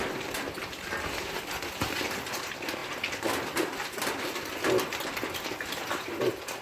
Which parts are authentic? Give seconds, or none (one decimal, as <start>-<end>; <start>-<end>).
0.0-6.6